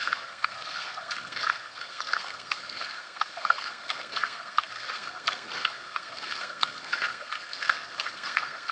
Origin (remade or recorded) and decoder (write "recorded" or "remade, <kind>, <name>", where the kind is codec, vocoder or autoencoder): remade, codec, SNAC